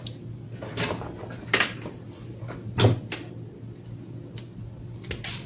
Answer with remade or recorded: recorded